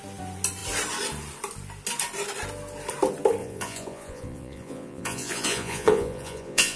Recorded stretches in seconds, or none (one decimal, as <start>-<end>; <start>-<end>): 0.0-3.4